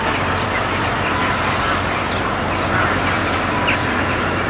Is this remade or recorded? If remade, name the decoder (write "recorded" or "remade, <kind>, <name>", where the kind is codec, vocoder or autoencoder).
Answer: recorded